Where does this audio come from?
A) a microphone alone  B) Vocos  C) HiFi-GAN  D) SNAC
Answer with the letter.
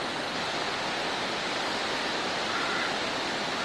A